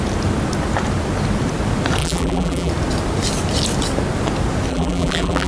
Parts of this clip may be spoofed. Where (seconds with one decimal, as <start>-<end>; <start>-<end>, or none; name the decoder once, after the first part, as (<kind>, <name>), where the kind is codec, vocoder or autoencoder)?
2.0-2.7 (vocoder, BigVGAN v2); 4.7-5.5